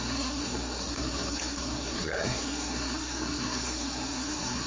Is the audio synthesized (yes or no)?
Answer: yes